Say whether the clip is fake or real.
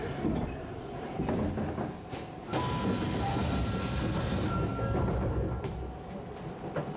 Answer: real